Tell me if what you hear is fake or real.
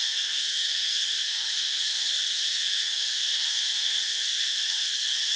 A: fake